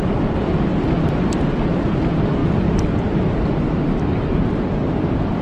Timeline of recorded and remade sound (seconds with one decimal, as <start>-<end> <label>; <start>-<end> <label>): 0.0-5.4 recorded